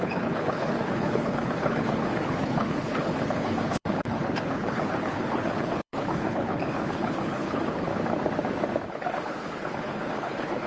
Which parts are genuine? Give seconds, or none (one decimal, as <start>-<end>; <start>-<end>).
7.9-8.9